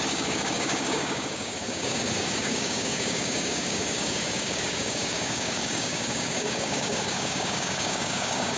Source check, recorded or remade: remade